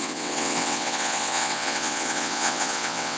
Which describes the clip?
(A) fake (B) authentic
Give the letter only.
A